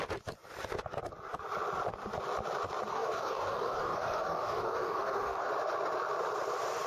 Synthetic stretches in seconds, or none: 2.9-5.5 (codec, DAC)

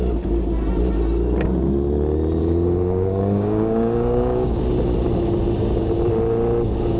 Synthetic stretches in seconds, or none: 2.4-4.6 (codec, DAC)

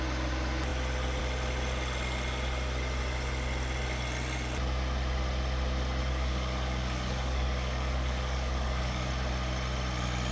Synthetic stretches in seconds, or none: 6.0-9.1 (codec, DAC)

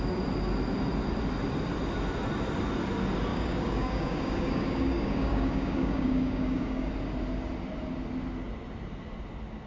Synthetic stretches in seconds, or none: 3.3-6.9 (codec, DAC)

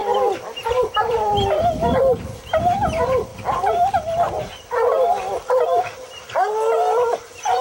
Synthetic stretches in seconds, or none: none

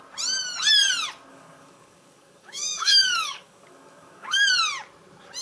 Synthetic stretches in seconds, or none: 1.3-4.5 (codec, DAC)